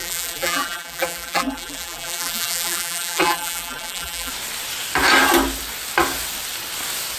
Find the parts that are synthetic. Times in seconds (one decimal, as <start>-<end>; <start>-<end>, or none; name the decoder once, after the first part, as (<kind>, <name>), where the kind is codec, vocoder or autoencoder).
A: 0.0-4.3 (vocoder, BigVGAN v2)